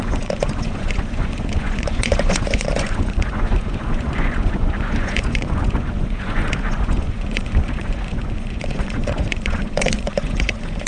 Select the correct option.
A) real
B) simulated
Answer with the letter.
B